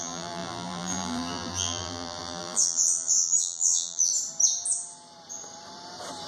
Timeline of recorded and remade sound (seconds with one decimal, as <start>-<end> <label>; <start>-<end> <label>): 0.0-4.1 remade; 4.1-6.3 recorded

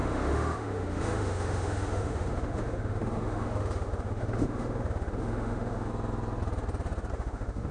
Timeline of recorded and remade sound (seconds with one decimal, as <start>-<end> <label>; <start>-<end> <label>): 0.0-5.9 remade; 5.9-7.1 recorded; 7.1-7.7 remade